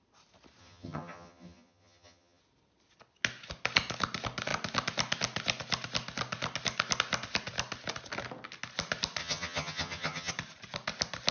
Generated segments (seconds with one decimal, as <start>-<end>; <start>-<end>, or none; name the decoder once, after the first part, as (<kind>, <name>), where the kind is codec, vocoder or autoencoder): 0.6-2.4 (vocoder, HiFi-GAN); 9.2-10.3